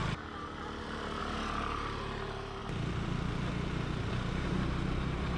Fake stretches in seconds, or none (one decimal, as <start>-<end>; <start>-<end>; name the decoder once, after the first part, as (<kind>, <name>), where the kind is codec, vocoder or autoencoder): none

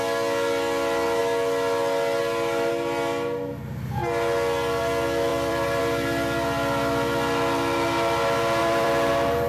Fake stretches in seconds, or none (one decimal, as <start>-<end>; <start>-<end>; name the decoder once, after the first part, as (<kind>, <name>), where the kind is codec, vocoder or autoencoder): 5.3-5.8 (vocoder, BigVGAN v2); 8.6-9.1

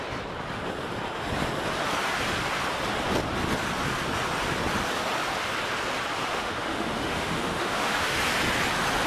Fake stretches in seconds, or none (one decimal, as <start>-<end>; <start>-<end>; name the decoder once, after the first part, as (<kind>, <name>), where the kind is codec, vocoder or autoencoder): 6.2-8.2 (autoencoder, DAC-VAE)

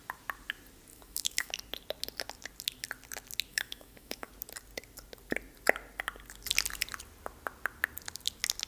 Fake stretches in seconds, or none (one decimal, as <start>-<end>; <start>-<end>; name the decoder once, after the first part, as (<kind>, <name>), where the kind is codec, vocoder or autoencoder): 0.9-1.5 (autoencoder, DAC-VAE); 3.5-4.3

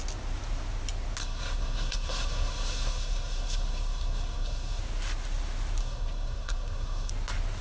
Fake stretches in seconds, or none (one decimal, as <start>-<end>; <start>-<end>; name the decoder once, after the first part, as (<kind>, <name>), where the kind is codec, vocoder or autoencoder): 1.2-4.8 (codec, SNAC); 5.8-7.1

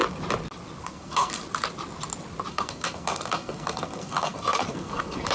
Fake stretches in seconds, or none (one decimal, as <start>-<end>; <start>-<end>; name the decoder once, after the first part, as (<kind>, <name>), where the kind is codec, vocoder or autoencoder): 0.8-1.4 (codec, SNAC); 2.5-5.3